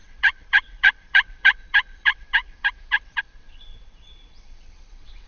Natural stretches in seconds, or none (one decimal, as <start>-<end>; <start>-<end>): none